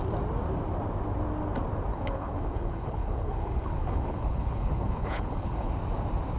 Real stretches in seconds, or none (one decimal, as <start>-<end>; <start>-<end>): 0.0-1.9; 5.7-6.4